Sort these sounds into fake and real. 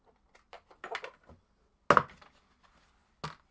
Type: real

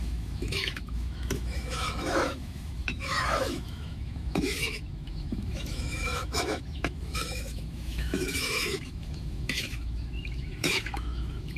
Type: fake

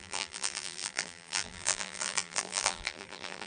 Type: fake